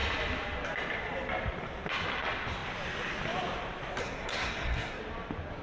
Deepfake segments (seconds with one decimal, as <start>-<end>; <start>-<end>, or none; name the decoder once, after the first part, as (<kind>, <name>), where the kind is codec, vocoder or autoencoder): 4.0-5.0 (codec, SNAC)